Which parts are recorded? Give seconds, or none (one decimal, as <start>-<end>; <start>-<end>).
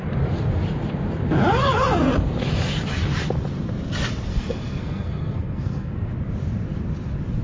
0.0-4.3; 6.1-7.4